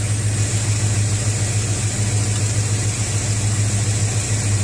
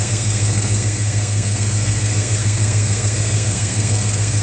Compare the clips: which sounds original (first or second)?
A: first